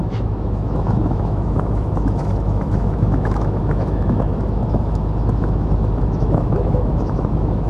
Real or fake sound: fake